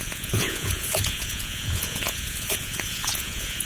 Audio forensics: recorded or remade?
remade